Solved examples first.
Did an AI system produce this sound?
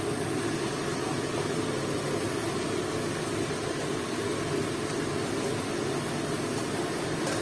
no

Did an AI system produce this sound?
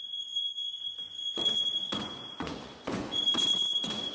yes